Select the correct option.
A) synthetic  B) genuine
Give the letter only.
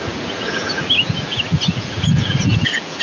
A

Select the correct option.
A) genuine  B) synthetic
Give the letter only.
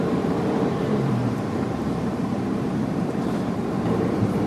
B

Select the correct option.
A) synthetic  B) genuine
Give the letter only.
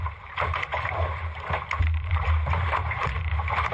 A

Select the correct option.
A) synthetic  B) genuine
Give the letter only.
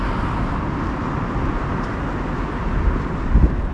B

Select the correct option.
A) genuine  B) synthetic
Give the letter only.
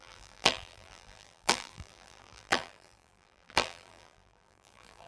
B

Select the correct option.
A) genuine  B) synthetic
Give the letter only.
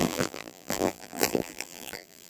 B